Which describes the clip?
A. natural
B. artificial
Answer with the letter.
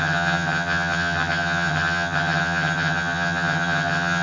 B